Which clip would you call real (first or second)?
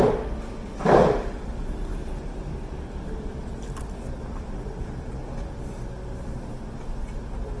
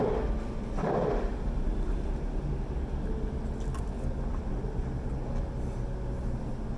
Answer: second